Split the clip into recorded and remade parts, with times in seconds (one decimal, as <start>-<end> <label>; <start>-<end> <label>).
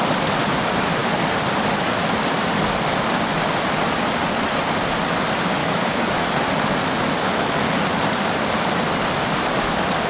0.0-5.6 recorded; 5.6-6.1 remade; 6.1-10.1 recorded